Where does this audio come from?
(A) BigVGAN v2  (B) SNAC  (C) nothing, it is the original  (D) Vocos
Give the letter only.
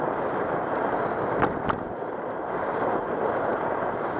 C